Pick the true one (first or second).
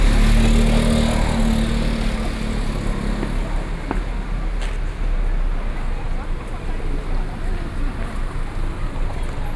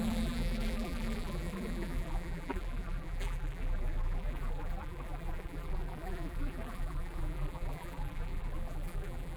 first